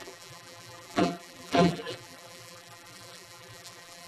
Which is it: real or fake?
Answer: fake